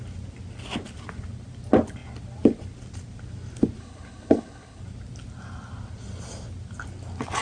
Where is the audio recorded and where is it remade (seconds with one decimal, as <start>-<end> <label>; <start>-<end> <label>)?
0.0-3.8 recorded; 3.8-4.8 remade; 4.8-7.4 recorded